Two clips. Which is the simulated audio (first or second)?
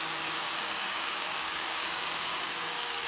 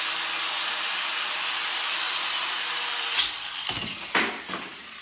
first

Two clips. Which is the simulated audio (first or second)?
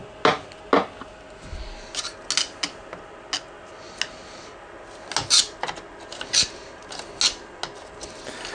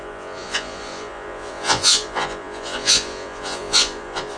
second